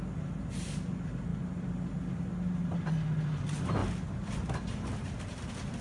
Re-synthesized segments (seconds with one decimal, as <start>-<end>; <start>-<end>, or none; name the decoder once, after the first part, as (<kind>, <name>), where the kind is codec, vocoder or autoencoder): none